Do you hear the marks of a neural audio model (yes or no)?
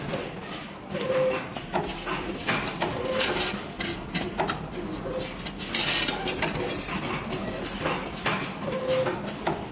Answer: no